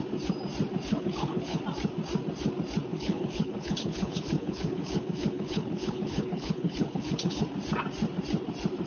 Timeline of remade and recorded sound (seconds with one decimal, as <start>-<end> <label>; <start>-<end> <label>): 0.0-0.9 recorded; 0.9-1.6 remade; 1.6-2.9 recorded; 2.9-7.4 remade; 7.4-8.9 recorded